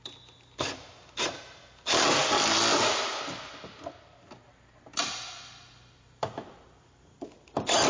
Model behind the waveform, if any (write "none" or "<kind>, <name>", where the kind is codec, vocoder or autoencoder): none